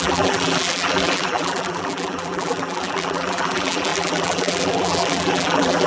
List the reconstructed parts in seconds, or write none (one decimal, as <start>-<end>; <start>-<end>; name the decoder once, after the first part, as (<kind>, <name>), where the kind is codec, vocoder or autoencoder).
0.0-5.9 (vocoder, BigVGAN v2)